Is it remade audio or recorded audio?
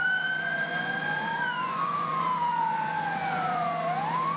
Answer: remade